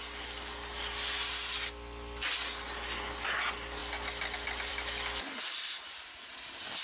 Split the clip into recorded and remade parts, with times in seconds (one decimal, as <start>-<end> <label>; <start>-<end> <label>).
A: 0.0-6.8 recorded